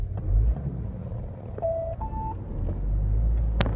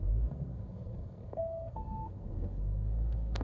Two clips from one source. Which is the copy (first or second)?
second